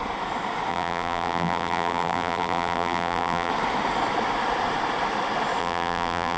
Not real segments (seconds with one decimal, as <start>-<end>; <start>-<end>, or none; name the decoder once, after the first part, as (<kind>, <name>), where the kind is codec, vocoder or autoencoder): 0.7-3.5 (vocoder, BigVGAN v2); 5.6-6.4